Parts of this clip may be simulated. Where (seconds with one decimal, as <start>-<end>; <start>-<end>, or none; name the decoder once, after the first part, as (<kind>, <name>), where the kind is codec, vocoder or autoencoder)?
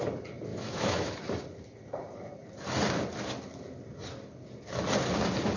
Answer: 0.5-1.1 (autoencoder, DAC-VAE)